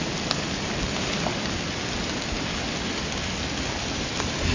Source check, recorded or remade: recorded